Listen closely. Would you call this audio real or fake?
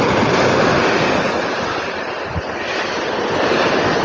real